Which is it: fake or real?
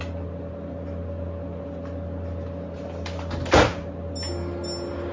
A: real